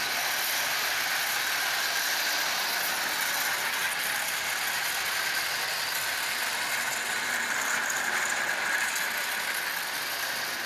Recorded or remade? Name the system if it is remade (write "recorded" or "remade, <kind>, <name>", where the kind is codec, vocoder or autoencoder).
recorded